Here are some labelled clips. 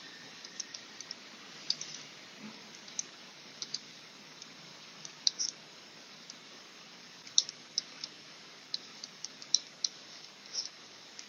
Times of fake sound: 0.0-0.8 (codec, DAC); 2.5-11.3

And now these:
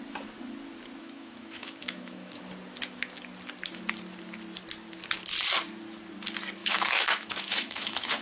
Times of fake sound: 1.0-2.4 (autoencoder, DAC-VAE); 6.6-8.2

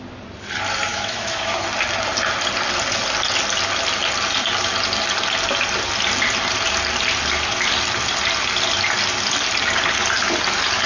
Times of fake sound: 0.9-1.6 (autoencoder, DAC-VAE)

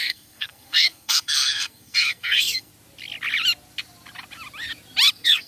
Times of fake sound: 0.0-2.7 (codec, SNAC); 5.1-5.5

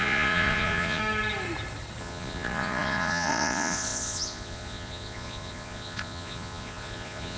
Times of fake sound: 0.0-1.0 (vocoder, Vocos); 2.0-7.4

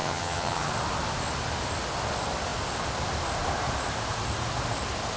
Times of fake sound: 0.0-0.7 (vocoder, HiFi-GAN)

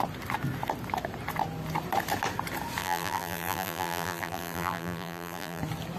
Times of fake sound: 2.8-5.6 (vocoder, BigVGAN v2)